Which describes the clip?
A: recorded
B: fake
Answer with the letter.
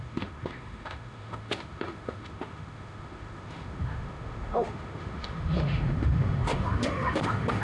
B